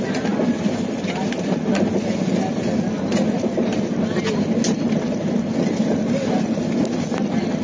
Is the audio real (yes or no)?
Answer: yes